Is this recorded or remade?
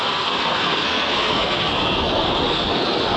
remade